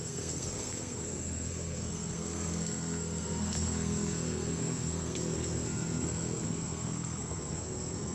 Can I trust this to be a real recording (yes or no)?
no